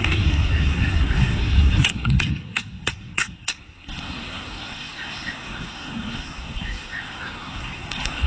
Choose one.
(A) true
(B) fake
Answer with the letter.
B